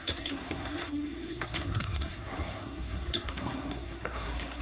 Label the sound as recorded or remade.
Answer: remade